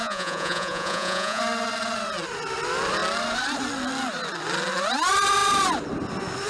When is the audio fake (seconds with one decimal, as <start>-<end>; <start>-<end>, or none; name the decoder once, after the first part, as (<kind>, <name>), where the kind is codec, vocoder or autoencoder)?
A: 0.0-1.4 (vocoder, Vocos)